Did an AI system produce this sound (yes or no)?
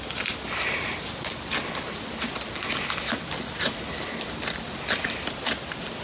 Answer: no